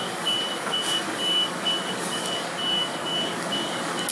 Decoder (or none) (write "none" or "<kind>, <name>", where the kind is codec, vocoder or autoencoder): codec, DAC